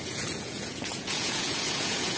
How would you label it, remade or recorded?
remade